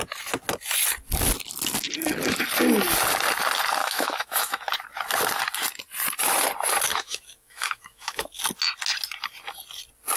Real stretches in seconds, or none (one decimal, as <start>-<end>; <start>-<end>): 0.0-3.8; 4.6-6.9; 8.4-10.2